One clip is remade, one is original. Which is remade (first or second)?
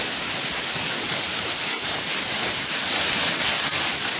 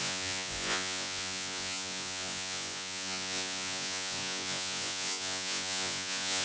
second